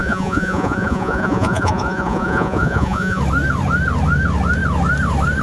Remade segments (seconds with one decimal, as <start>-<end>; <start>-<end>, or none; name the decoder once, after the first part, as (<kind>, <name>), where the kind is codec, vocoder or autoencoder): 0.0-3.2 (vocoder, Vocos)